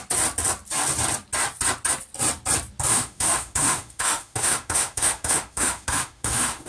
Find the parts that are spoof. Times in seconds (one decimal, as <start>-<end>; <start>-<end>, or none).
2.9-6.7